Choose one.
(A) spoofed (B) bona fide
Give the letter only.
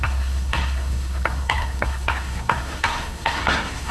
A